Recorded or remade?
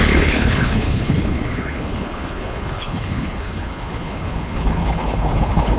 remade